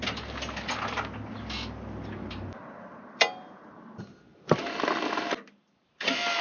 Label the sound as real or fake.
real